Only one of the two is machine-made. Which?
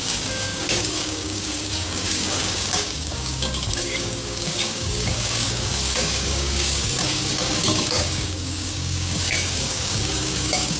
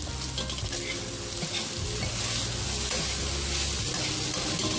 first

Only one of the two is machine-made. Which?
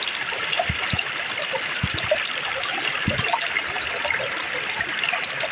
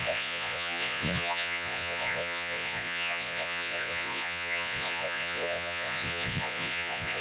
second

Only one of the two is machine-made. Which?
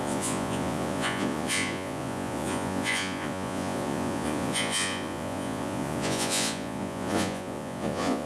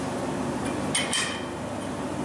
first